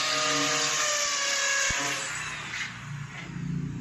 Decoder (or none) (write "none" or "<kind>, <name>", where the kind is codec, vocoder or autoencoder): none